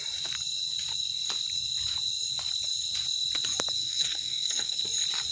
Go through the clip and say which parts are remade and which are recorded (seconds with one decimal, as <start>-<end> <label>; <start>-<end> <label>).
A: 0.0-3.8 recorded; 3.8-4.8 remade; 4.8-5.3 recorded